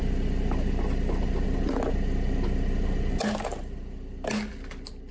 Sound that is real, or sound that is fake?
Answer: real